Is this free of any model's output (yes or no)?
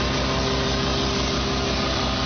yes